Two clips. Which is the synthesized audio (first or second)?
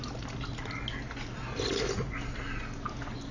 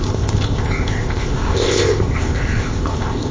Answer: second